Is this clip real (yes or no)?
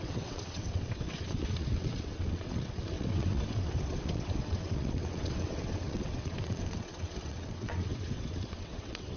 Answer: no